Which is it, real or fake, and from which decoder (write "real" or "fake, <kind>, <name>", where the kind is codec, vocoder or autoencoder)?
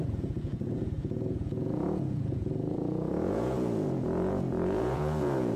fake, vocoder, Vocos